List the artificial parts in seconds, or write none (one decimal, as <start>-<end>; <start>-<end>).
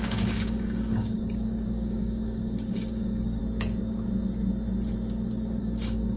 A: 0.0-3.4; 5.6-6.2